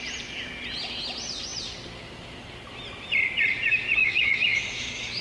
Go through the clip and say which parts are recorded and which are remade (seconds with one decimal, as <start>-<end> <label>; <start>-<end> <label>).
0.0-4.0 recorded; 4.0-5.2 remade